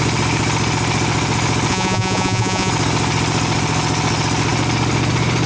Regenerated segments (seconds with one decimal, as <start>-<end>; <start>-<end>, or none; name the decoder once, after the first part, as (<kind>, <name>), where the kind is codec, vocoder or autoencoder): 1.7-2.7 (vocoder, Vocos)